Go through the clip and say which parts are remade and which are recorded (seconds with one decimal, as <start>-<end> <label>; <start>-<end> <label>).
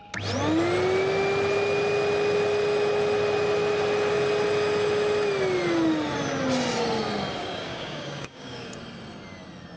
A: 0.0-7.4 recorded; 7.4-8.7 remade; 8.7-9.8 recorded